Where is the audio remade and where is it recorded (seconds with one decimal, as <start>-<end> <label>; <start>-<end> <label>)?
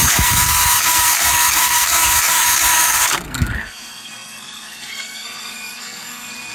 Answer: 0.0-6.5 remade